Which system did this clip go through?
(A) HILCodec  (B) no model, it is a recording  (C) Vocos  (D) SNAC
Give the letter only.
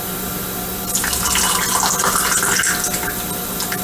B